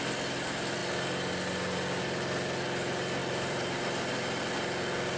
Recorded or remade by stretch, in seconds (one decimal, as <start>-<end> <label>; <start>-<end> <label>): 0.0-3.2 recorded; 3.2-4.0 remade; 4.0-5.2 recorded